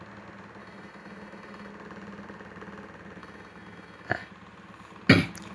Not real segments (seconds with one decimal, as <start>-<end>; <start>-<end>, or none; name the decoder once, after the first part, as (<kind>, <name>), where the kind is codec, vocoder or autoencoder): 0.6-1.7 (autoencoder, DAC-VAE); 3.2-4.3